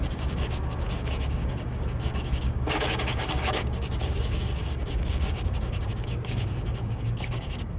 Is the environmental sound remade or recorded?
remade